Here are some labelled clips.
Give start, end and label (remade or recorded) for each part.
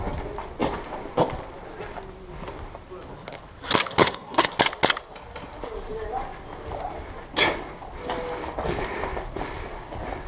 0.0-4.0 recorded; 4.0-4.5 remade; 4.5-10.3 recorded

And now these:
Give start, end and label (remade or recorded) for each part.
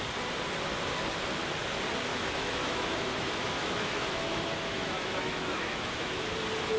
0.0-2.1 recorded; 2.1-6.2 remade; 6.2-6.8 recorded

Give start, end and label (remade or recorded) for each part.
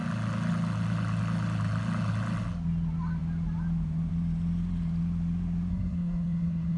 0.0-5.7 recorded; 5.7-6.8 remade